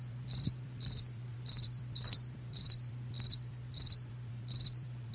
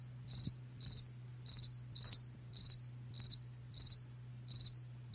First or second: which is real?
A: second